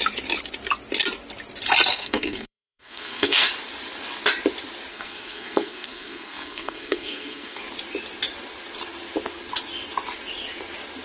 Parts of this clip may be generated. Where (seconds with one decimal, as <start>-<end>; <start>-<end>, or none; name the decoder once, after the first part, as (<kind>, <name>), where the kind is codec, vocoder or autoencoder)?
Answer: 1.9-3.5 (codec, SNAC); 4.9-7.6